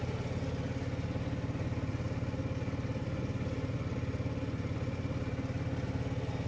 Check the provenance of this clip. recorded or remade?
recorded